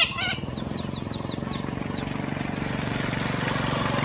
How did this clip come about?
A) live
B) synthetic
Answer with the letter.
A